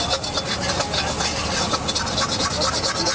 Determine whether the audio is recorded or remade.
recorded